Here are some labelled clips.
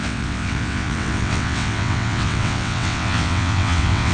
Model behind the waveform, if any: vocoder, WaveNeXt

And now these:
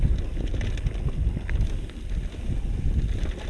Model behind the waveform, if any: none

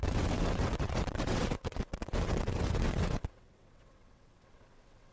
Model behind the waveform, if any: vocoder, WaveNeXt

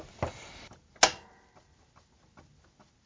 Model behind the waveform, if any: none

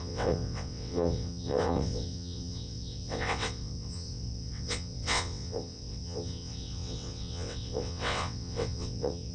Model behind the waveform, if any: vocoder, WaveNeXt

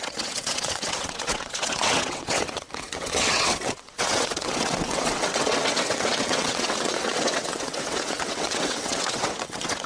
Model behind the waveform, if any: vocoder, WaveNeXt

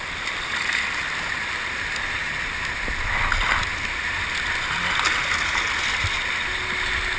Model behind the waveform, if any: none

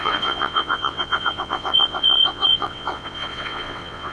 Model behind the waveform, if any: vocoder, WaveNeXt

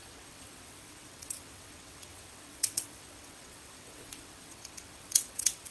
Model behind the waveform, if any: vocoder, WaveNeXt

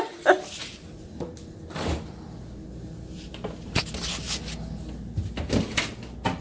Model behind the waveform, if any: none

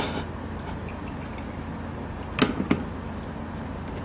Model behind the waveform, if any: none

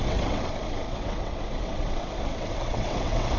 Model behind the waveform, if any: vocoder, WaveNeXt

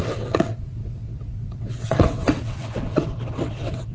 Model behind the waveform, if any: vocoder, WaveNeXt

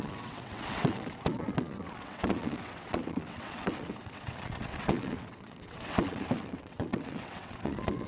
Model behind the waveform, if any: vocoder, WaveNeXt